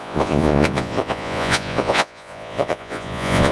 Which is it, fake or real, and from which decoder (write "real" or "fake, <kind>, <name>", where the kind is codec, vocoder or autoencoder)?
fake, vocoder, Vocos